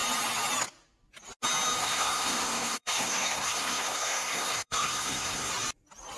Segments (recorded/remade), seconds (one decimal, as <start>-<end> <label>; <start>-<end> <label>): 0.0-1.8 recorded; 1.8-5.5 remade; 5.5-6.2 recorded